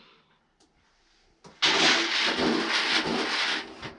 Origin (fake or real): real